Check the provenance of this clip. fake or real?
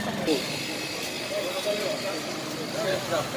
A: real